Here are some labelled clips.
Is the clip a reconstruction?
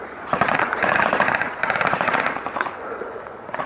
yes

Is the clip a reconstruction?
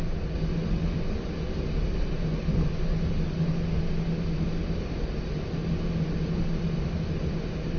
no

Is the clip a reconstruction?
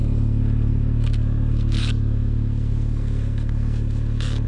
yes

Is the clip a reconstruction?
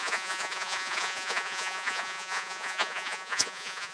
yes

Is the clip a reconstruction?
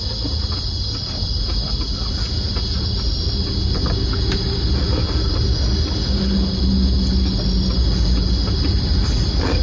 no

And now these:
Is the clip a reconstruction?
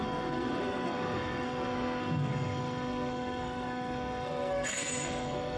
yes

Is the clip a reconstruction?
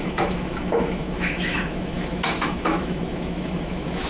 yes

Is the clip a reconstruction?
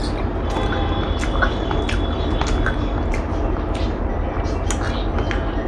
no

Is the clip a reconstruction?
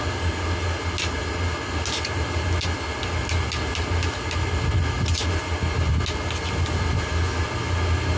no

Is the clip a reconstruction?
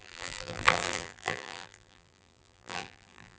yes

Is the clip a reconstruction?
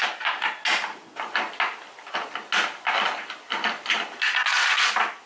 no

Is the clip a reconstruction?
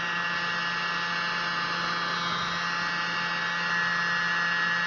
no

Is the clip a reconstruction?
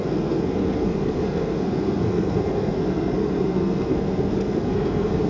yes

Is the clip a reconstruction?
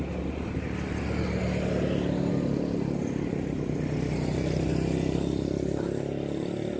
no